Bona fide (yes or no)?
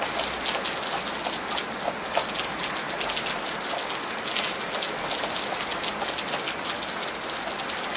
yes